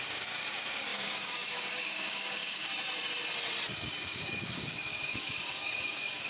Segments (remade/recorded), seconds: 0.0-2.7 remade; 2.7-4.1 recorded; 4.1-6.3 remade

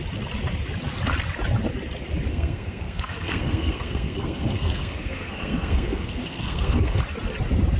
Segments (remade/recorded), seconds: 0.0-2.3 recorded; 2.3-7.0 remade; 7.0-7.8 recorded

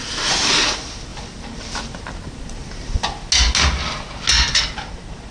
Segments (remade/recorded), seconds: 0.0-5.3 recorded

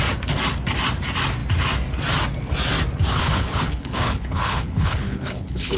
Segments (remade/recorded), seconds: 0.0-3.1 recorded; 3.1-5.8 remade

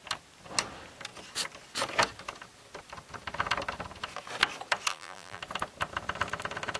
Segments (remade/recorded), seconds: 0.0-4.9 recorded; 4.9-5.4 remade; 5.4-6.8 recorded

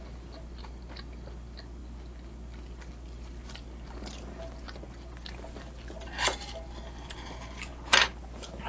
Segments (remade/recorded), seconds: 0.0-8.7 recorded

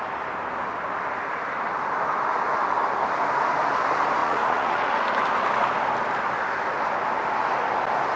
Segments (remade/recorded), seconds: 0.0-4.2 recorded; 4.2-4.9 remade; 4.9-8.2 recorded

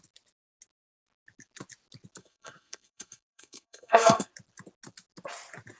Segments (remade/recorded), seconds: 0.0-2.2 recorded; 2.2-4.3 remade; 4.3-5.8 recorded